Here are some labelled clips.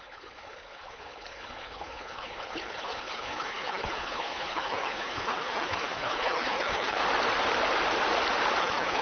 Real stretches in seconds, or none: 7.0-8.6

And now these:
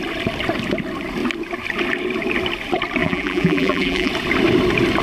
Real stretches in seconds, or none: 0.0-3.0; 4.1-5.0

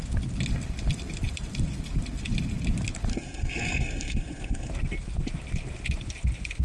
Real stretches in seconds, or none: 0.0-3.1; 4.7-6.6

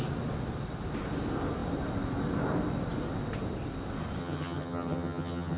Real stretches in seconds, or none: 0.0-4.2

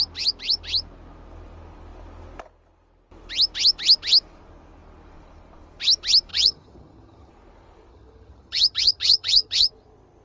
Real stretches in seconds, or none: 0.0-6.3; 7.3-7.9; 9.7-10.2